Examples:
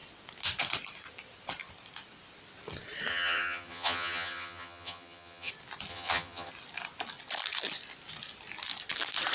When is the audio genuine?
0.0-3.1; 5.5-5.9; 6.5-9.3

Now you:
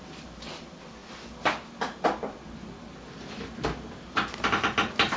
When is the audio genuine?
0.0-5.2

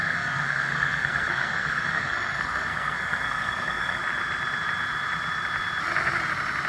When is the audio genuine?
4.0-6.7

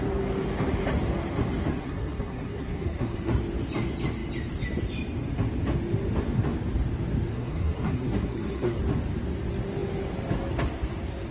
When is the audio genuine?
0.0-1.7; 3.4-7.3; 8.8-11.3

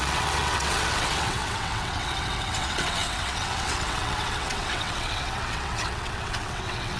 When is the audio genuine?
none

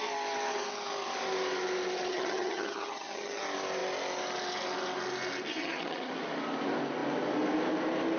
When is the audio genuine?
0.0-2.1; 3.4-5.5; 6.1-8.2